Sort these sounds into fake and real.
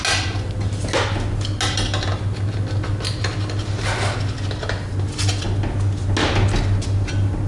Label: real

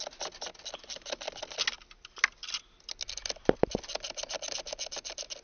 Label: real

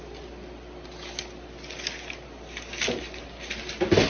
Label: real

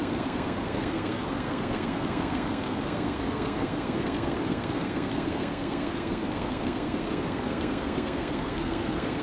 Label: fake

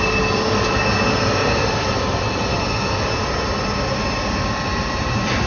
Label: real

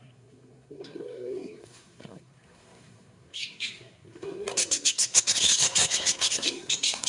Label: fake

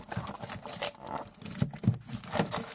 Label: real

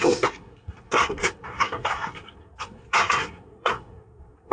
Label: fake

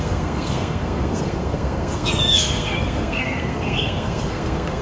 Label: fake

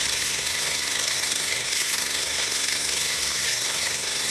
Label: fake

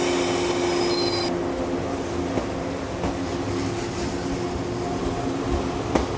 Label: real